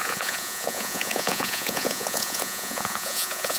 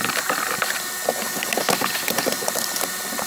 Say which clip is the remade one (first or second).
first